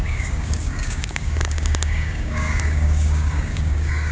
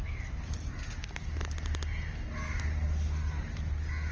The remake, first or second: first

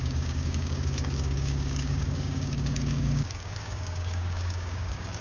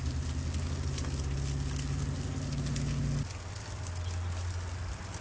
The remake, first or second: first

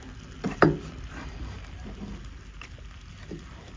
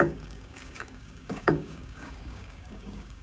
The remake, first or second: second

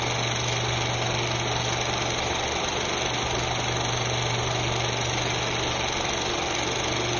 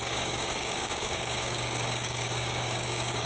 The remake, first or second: second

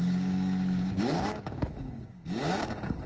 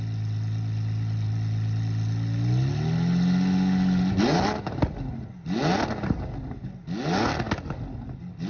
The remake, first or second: first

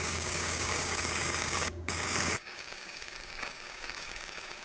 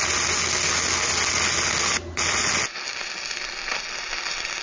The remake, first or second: first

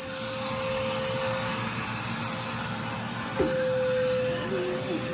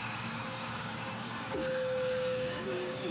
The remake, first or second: second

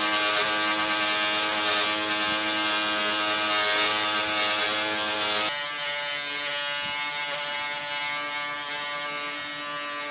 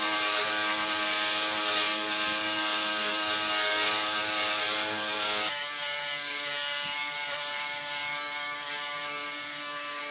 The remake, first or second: second